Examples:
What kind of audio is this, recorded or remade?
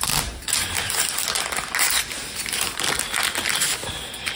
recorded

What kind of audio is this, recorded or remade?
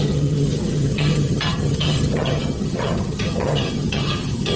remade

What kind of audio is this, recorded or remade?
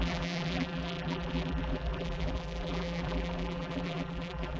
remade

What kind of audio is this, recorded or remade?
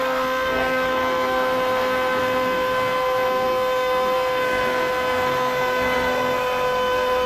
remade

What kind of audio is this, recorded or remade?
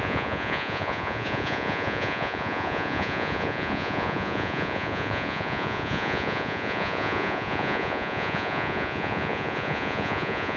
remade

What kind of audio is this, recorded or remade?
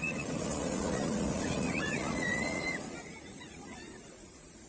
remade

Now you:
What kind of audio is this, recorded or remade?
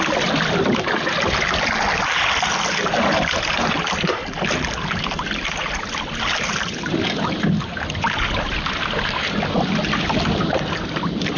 recorded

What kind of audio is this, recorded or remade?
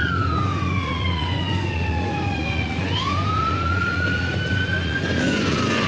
remade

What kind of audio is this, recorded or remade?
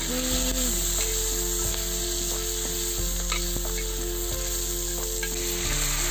recorded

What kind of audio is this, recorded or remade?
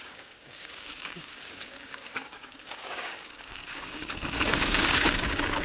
remade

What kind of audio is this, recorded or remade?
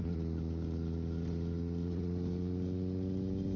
recorded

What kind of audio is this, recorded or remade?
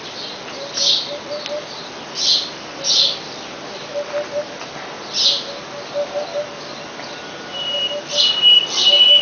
recorded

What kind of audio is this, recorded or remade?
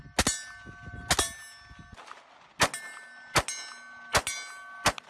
recorded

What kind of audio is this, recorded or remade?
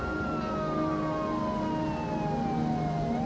recorded